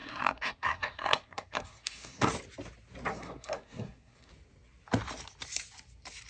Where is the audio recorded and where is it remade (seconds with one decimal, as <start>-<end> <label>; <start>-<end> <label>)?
0.0-2.3 remade; 2.3-3.1 recorded; 3.1-4.3 remade; 4.3-6.3 recorded